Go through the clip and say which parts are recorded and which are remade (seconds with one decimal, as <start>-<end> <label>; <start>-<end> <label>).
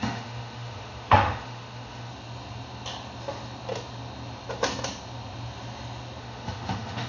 0.0-2.1 remade; 2.1-6.2 recorded; 6.2-7.1 remade